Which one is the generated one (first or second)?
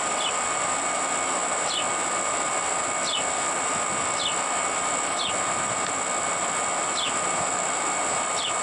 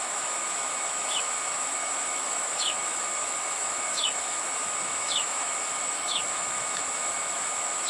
second